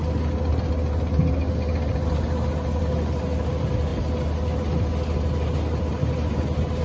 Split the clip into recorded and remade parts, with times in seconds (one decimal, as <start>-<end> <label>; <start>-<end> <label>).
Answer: 0.0-6.8 recorded